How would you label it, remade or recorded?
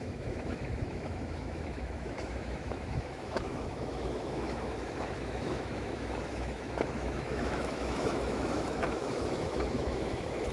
remade